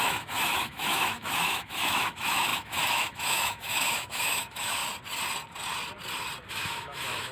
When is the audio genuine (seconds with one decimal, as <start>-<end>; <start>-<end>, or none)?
4.8-6.5